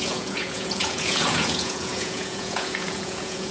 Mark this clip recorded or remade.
remade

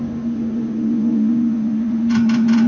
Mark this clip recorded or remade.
remade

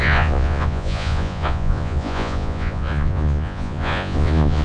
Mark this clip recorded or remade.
remade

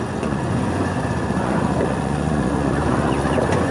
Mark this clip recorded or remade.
remade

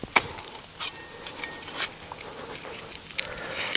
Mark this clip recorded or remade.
recorded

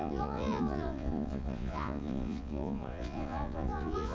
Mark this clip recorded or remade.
remade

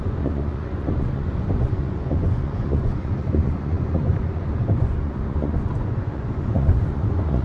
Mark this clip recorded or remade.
remade